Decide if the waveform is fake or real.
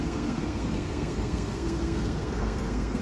fake